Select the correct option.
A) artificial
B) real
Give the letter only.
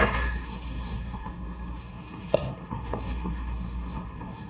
A